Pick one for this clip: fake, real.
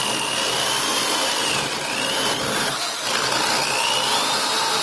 real